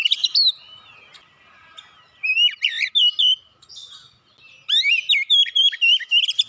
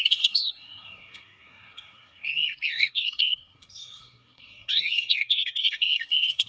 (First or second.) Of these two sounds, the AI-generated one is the second